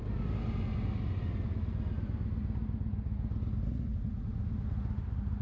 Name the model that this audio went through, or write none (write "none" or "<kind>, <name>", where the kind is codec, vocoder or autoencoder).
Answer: none